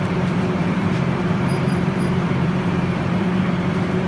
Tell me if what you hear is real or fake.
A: fake